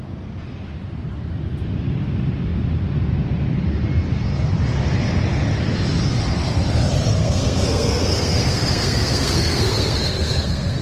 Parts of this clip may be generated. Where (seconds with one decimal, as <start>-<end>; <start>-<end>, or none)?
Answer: 7.2-10.8